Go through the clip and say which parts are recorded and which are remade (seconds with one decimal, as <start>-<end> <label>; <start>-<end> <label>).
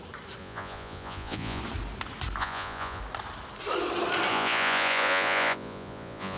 0.0-0.4 recorded; 0.4-1.6 remade; 1.6-2.4 recorded; 2.4-3.0 remade; 3.0-4.3 recorded; 4.3-6.4 remade